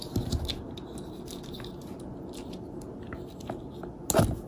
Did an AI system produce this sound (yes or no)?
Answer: no